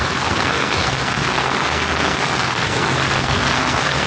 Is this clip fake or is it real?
fake